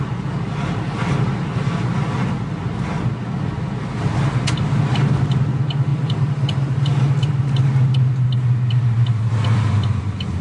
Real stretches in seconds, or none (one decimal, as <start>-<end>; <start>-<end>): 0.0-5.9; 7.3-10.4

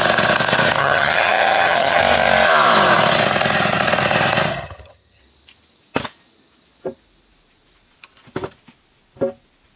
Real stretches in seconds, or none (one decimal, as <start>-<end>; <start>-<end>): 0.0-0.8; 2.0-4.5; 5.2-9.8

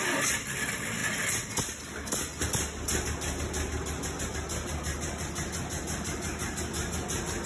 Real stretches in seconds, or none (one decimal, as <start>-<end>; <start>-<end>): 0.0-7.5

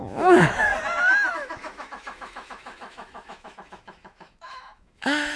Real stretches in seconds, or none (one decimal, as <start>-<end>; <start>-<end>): 0.7-1.3

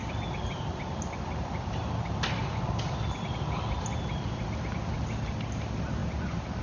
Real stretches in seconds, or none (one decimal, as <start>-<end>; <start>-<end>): 0.0-6.6

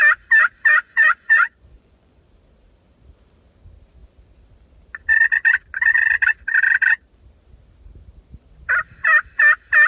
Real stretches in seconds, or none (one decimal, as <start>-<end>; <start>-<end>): 0.0-0.7; 2.2-9.9

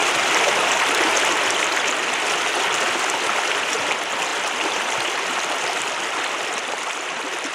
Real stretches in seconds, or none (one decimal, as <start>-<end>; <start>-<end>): 1.6-4.3; 4.8-7.5